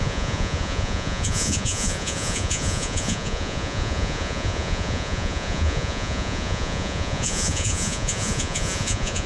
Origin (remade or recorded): remade